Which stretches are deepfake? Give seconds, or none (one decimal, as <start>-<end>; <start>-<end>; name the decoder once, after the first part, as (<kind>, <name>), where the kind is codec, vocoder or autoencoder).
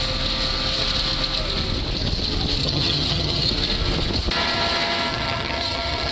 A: 2.6-3.5 (vocoder, HiFi-GAN); 5.1-6.1